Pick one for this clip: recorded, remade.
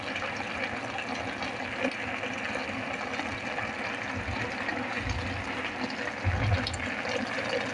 recorded